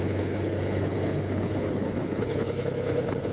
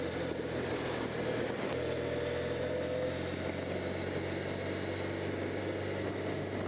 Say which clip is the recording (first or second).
second